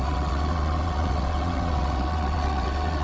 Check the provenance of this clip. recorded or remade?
remade